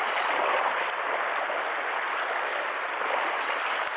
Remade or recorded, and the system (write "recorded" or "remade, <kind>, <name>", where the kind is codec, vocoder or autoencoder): recorded